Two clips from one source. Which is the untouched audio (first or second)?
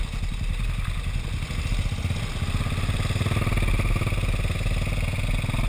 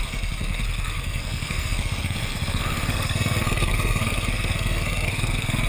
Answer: first